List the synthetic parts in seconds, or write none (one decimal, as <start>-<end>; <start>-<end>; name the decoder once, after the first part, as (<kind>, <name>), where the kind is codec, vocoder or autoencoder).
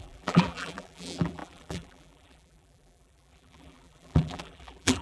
0.0-5.0 (vocoder, BigVGAN v2)